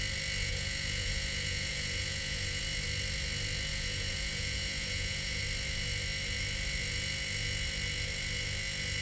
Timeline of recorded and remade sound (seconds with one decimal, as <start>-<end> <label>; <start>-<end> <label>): 0.0-0.4 recorded; 0.4-2.6 remade; 2.6-3.7 recorded; 3.7-5.4 remade; 5.4-9.0 recorded